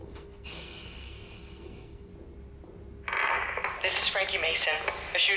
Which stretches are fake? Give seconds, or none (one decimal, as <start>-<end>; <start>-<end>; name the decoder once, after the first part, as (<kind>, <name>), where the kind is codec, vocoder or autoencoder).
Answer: 0.0-2.1 (codec, SNAC)